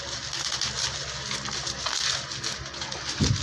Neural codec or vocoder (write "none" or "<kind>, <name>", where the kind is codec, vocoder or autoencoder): none